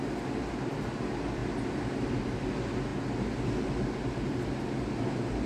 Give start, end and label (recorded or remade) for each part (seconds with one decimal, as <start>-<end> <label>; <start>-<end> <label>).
0.0-5.5 recorded